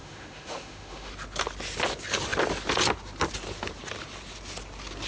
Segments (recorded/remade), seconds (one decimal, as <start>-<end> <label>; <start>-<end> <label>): 0.0-1.1 remade; 1.1-5.1 recorded